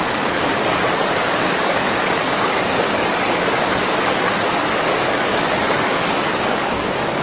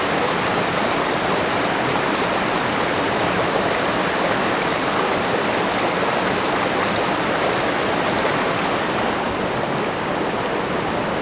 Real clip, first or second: second